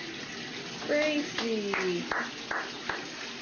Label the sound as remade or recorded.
recorded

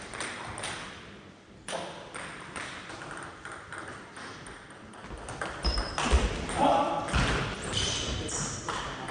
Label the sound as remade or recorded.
remade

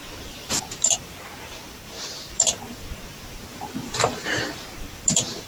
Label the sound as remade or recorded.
remade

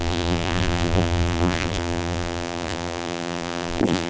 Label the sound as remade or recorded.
remade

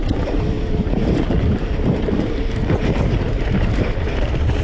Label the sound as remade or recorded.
remade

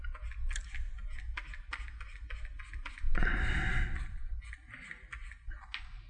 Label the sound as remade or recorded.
recorded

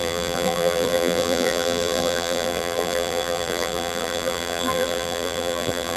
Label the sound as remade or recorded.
remade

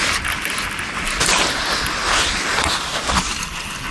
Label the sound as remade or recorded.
recorded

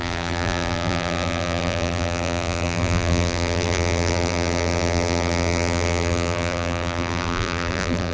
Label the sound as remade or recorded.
remade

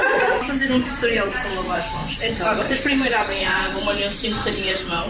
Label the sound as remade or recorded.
remade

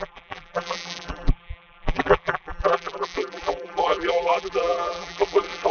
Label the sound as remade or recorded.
remade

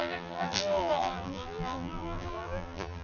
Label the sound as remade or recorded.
remade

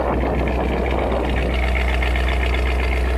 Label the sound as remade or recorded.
recorded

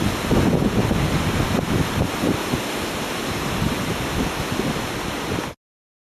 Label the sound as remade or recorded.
recorded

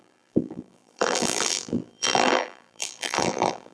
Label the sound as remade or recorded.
remade